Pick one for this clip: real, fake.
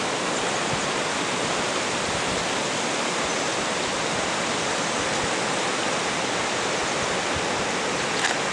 real